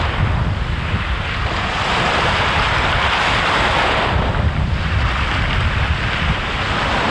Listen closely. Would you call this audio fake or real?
real